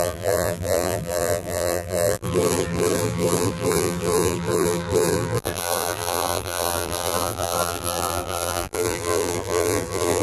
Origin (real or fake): fake